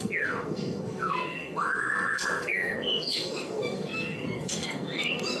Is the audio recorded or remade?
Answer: remade